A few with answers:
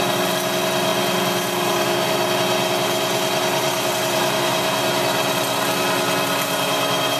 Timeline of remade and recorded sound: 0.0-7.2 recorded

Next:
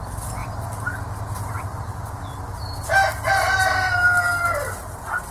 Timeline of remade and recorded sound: 0.0-5.3 recorded

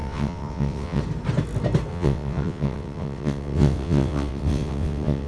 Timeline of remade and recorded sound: 0.0-1.0 remade; 1.0-1.9 recorded; 1.9-5.3 remade

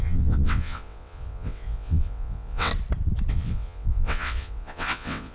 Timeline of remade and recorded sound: 0.0-2.7 remade; 2.7-3.3 recorded; 3.3-5.3 remade

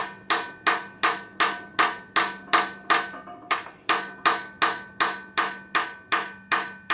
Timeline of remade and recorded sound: 0.0-6.9 recorded

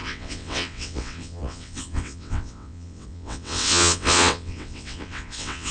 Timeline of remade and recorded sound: 0.0-5.7 remade

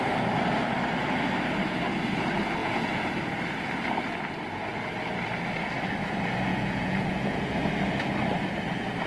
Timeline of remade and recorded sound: 0.0-2.6 recorded; 2.6-3.1 remade; 3.1-6.5 recorded; 6.5-7.5 remade; 7.5-9.1 recorded

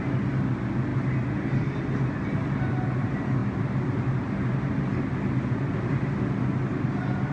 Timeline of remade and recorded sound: 0.0-7.3 recorded